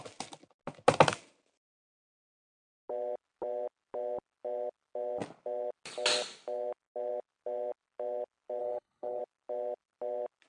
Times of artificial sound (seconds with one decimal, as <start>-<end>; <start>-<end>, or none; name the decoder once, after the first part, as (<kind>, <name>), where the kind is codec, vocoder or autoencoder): 8.6-9.2 (codec, HILCodec)